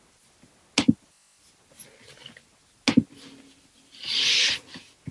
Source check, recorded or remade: recorded